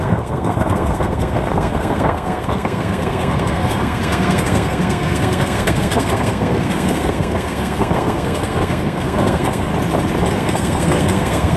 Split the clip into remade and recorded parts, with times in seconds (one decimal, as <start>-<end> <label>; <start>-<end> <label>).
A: 0.0-9.7 remade; 9.7-10.3 recorded; 10.3-11.6 remade

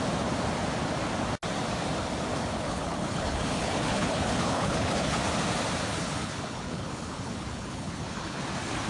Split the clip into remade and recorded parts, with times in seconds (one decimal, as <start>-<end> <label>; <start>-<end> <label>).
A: 0.0-2.4 recorded; 2.4-5.2 remade; 5.2-5.9 recorded; 5.9-8.4 remade; 8.4-8.9 recorded

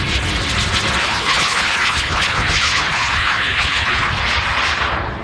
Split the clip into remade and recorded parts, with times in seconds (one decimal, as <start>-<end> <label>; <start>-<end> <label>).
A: 0.0-1.0 recorded; 1.0-4.1 remade; 4.1-5.2 recorded

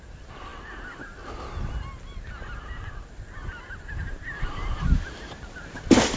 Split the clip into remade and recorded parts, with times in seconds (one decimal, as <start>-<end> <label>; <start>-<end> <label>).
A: 0.0-6.2 recorded